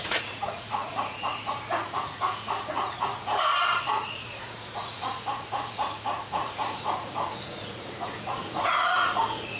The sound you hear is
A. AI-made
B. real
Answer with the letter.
A